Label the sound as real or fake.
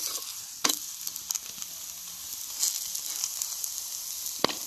real